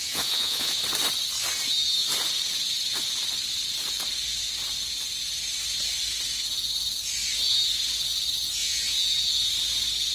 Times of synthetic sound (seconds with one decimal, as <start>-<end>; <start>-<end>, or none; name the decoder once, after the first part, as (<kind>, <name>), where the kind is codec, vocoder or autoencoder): 0.0-0.8 (vocoder, Vocos); 8.6-9.1